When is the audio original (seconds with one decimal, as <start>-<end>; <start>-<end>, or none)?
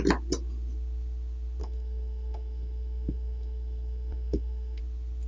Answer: 0.0-1.6; 4.8-5.3